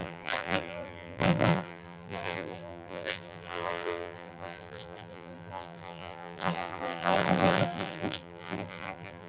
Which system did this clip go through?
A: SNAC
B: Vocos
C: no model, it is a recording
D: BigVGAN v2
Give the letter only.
D